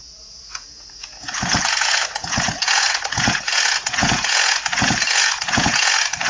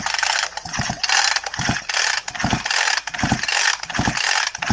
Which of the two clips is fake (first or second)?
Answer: first